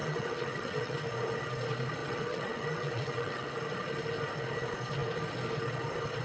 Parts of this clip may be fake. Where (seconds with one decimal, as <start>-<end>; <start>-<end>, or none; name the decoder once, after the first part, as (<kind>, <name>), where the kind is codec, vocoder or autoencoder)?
0.0-1.0 (vocoder, WaveNeXt); 2.0-3.5